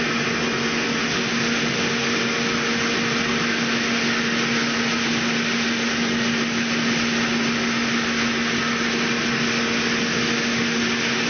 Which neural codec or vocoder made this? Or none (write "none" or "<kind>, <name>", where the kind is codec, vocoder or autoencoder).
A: none